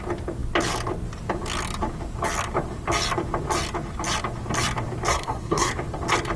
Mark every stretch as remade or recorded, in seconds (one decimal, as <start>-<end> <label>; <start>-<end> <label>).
0.0-5.1 recorded; 5.1-5.7 remade; 5.7-6.4 recorded